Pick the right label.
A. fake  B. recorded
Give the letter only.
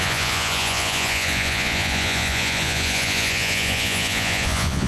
A